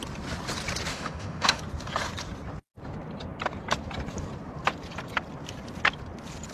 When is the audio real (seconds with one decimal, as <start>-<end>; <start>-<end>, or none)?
0.0-0.9; 1.6-6.5